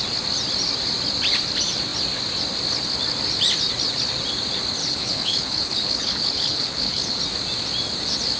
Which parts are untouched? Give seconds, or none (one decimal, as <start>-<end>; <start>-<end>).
0.0-4.8; 7.2-8.4